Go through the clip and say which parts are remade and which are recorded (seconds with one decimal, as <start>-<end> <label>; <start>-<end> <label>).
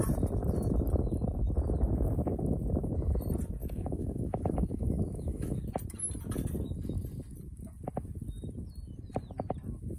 0.0-3.6 recorded; 3.6-5.6 remade; 5.6-10.0 recorded